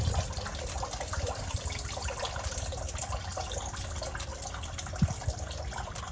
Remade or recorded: remade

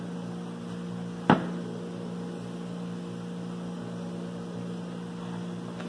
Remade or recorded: recorded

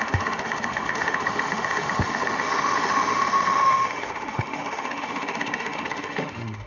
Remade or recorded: remade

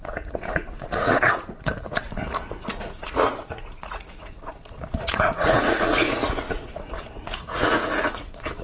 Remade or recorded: remade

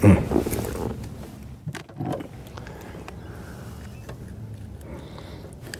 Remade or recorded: recorded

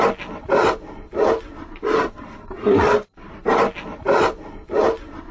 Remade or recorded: recorded